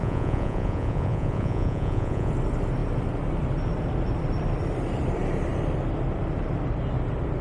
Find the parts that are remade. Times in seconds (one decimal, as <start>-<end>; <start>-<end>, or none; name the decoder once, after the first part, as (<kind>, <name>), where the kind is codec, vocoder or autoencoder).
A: 0.0-2.3 (vocoder, Vocos)